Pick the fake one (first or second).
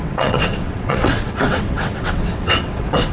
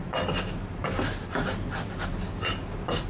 first